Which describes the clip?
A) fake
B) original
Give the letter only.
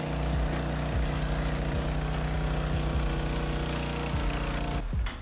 B